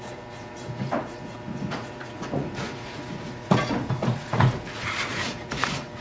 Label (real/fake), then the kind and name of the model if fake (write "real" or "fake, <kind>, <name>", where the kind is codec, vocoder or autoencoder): fake, vocoder, Vocos